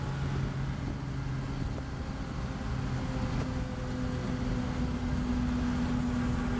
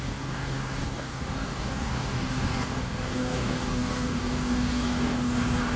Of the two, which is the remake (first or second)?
second